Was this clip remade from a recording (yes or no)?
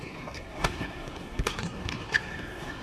yes